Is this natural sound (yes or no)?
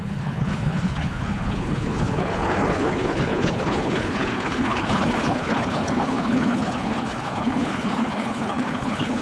no